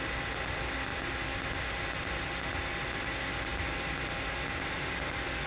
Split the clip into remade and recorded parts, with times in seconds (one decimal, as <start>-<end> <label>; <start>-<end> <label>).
0.0-5.5 recorded